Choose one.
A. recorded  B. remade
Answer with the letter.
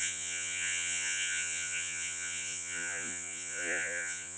B